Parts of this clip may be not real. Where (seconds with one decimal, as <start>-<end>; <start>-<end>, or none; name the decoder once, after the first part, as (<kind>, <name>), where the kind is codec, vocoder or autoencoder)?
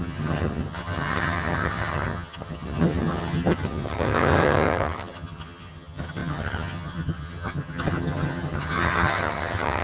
0.0-9.8 (vocoder, HiFi-GAN)